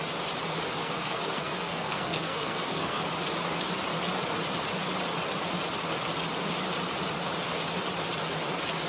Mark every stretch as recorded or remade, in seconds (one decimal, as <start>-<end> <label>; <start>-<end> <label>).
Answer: 0.0-0.8 recorded; 0.8-3.0 remade; 3.0-8.9 recorded